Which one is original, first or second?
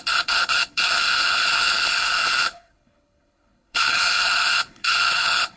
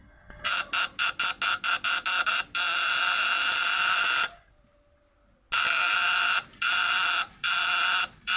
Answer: second